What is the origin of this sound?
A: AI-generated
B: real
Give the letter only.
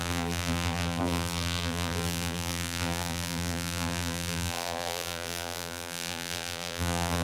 A